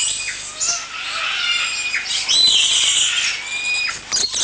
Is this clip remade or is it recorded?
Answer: recorded